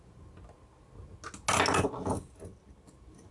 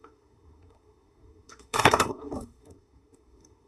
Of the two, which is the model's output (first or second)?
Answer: second